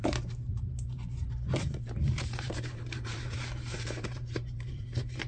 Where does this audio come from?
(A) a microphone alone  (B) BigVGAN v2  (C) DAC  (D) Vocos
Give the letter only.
B